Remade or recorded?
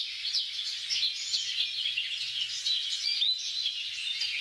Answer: recorded